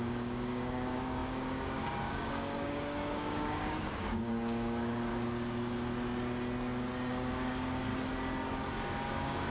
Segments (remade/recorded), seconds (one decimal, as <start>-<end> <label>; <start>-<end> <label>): 0.0-5.1 remade; 5.1-7.1 recorded; 7.1-7.9 remade; 7.9-9.1 recorded; 9.1-9.5 remade